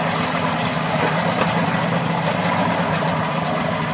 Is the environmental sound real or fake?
real